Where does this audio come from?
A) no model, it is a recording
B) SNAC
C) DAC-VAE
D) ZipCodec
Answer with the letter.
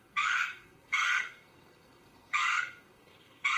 B